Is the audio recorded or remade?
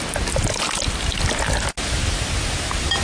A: recorded